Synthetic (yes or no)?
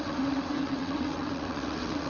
yes